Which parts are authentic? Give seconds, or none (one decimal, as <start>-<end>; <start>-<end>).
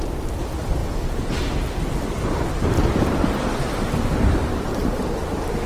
0.8-3.0